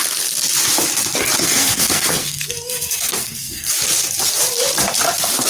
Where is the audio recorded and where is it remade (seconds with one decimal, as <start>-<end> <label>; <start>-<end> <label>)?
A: 0.0-1.4 recorded; 1.4-3.7 remade; 3.7-5.5 recorded